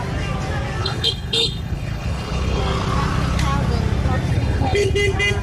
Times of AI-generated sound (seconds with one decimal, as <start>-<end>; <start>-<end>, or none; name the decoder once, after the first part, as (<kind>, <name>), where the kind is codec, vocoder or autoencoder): 0.8-2.6 (codec, HILCodec); 4.3-4.9